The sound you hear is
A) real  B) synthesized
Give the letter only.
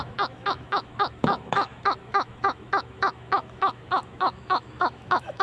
B